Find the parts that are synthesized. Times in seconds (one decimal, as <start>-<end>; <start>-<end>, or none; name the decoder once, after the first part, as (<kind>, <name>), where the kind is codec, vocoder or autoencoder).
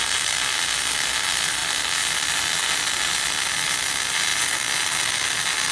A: none